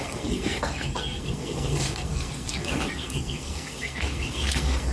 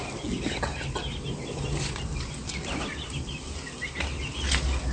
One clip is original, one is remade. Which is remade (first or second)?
first